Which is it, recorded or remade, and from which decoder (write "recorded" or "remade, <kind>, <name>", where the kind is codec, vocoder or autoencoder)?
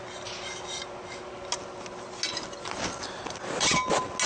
recorded